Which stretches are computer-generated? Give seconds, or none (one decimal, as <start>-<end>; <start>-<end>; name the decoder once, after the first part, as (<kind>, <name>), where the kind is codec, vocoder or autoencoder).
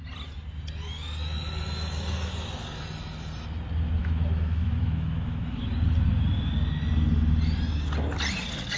4.0-5.6 (autoencoder, DAC-VAE)